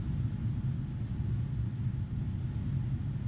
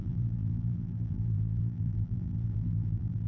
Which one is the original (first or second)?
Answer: first